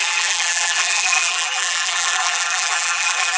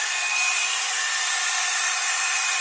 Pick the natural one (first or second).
second